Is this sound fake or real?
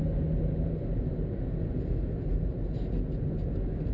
real